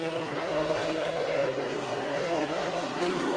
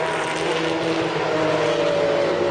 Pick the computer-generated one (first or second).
first